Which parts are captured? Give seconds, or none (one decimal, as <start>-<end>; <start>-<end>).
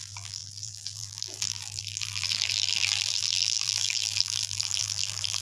none